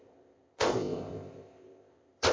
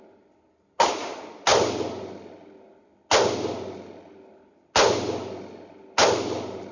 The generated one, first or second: first